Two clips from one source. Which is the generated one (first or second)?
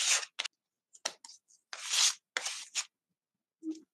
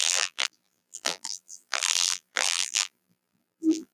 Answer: second